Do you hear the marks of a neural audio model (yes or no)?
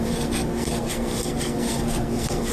yes